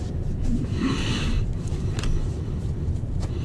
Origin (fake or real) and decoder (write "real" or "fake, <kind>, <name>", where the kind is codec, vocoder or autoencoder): fake, vocoder, BigVGAN v2